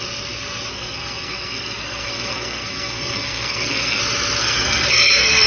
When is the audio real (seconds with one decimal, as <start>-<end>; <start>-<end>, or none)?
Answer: 0.0-0.7; 4.0-4.4